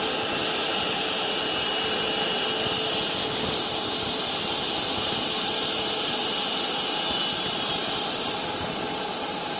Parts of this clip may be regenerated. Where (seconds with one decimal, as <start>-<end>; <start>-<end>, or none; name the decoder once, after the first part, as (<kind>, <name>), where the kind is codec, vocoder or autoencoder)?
none